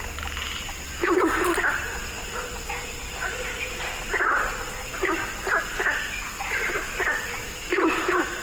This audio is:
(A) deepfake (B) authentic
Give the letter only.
B